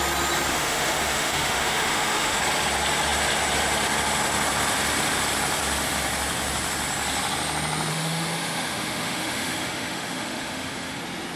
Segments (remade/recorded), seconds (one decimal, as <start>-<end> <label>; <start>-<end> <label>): 0.0-0.5 recorded; 0.5-2.4 remade; 2.4-7.9 recorded; 7.9-11.0 remade; 11.0-11.4 recorded